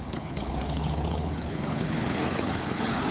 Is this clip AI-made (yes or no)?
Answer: yes